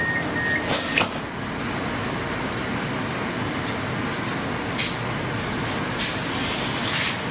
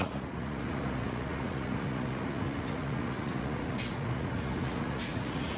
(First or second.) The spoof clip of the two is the second